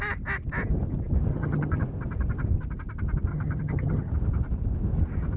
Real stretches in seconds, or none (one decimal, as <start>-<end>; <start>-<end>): 0.0-1.3; 1.8-3.3; 4.1-5.4